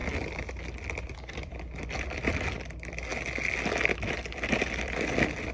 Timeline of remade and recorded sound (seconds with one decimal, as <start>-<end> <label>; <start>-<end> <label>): 0.0-0.5 recorded; 0.5-3.1 remade; 3.1-3.9 recorded; 3.9-5.5 remade